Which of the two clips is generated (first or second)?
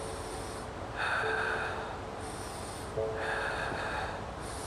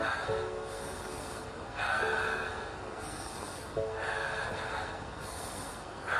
second